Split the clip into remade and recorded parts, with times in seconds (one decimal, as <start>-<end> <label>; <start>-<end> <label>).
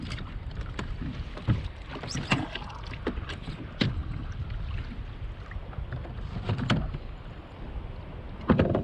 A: 0.0-4.0 remade; 4.0-7.7 recorded; 7.7-8.8 remade